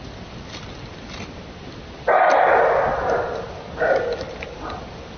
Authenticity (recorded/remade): recorded